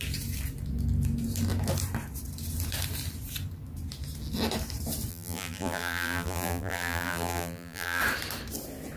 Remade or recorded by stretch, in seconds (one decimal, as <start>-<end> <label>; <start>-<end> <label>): 0.0-5.1 recorded; 5.1-8.0 remade; 8.0-9.0 recorded